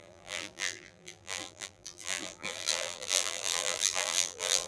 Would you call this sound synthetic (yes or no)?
yes